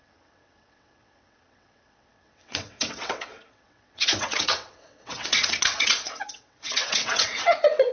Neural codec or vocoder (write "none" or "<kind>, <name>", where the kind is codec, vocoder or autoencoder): vocoder, WaveNeXt